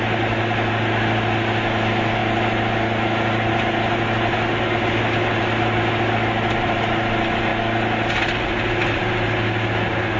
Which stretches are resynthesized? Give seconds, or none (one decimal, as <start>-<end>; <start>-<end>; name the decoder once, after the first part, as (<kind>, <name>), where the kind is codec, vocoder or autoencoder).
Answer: none